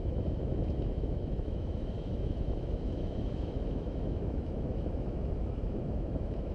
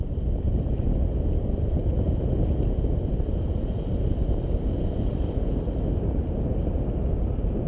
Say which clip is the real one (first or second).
second